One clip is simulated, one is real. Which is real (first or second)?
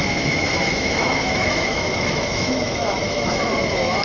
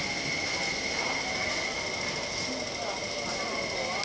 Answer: second